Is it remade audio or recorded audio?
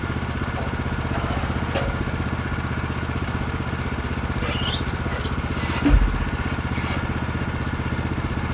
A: recorded